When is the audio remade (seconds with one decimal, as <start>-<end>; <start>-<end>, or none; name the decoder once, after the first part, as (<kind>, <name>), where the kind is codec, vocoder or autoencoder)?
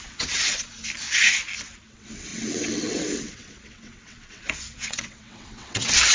0.0-0.7 (vocoder, WaveNeXt); 1.8-6.1